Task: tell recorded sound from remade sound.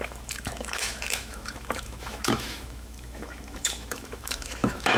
remade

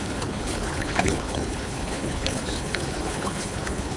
remade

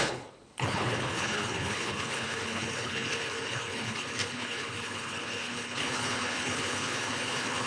remade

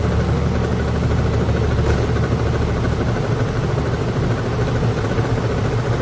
recorded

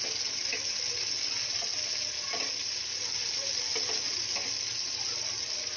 recorded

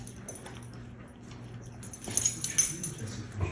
recorded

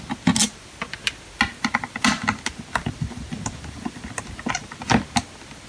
recorded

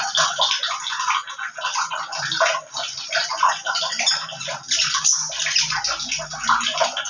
recorded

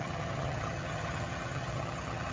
remade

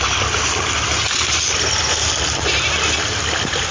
recorded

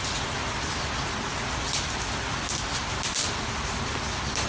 remade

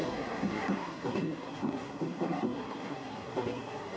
remade